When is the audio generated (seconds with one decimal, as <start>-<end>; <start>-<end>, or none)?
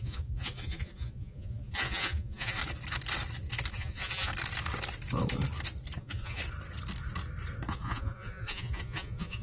0.0-2.6; 3.7-4.3; 6.0-6.4; 7.7-9.4